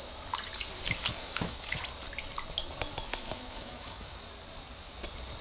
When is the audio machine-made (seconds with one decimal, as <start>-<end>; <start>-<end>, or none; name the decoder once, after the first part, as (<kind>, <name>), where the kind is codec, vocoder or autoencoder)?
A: 1.1-1.8 (autoencoder, DAC-VAE); 3.1-4.3